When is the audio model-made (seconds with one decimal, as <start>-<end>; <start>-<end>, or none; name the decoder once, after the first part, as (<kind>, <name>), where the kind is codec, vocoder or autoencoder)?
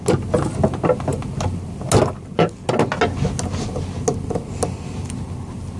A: none